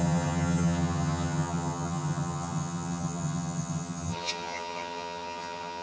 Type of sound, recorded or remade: remade